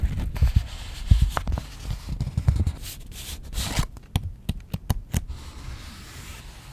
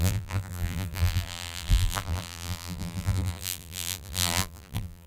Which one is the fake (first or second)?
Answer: second